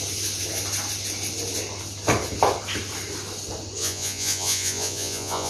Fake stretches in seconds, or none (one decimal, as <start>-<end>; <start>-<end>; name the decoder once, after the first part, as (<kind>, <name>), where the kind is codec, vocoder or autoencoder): 3.8-5.5 (vocoder, Vocos)